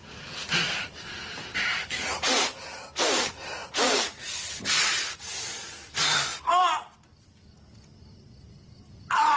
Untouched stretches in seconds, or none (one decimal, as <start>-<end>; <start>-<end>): 0.0-9.4